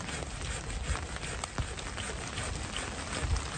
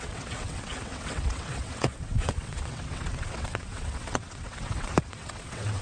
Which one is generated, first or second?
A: second